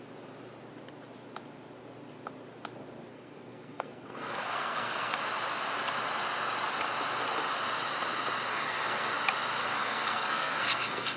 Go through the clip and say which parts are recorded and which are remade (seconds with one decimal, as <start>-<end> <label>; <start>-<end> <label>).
0.0-3.1 recorded; 3.1-5.2 remade; 5.2-8.5 recorded; 8.5-9.1 remade; 9.1-9.6 recorded; 9.6-11.2 remade